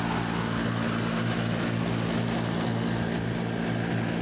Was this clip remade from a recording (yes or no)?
no